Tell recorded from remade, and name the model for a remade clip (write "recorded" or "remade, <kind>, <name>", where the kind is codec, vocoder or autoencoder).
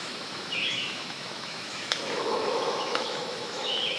remade, autoencoder, DAC-VAE